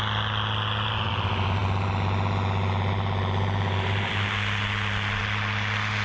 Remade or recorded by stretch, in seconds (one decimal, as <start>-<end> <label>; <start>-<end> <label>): 0.0-6.0 recorded